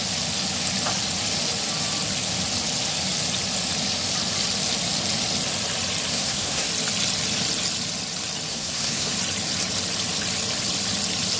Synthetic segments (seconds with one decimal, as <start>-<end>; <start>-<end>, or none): 6.1-6.7; 8.5-9.1